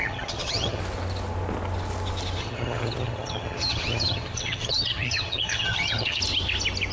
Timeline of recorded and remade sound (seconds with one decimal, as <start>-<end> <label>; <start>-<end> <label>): 0.0-0.8 remade; 0.8-2.4 recorded; 2.4-6.2 remade; 6.2-6.9 recorded